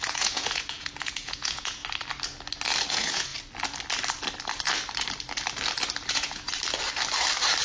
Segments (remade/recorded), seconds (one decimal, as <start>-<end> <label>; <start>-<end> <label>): 0.0-1.8 remade; 1.8-2.9 recorded; 2.9-3.3 remade; 3.3-6.1 recorded; 6.1-6.5 remade; 6.5-7.6 recorded